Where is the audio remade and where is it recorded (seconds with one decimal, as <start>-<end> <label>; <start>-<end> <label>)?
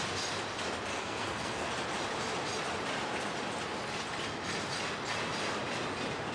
0.0-0.9 recorded; 0.9-1.7 remade; 1.7-6.3 recorded